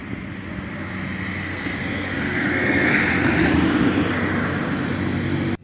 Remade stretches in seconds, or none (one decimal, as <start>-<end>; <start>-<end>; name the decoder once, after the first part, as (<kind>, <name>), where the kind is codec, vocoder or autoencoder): 1.4-3.0 (codec, SNAC)